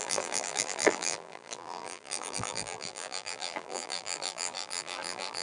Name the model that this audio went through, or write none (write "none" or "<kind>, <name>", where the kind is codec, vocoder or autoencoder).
vocoder, BigVGAN v2